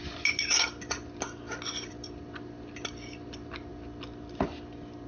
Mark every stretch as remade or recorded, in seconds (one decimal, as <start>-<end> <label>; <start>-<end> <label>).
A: 0.0-5.1 recorded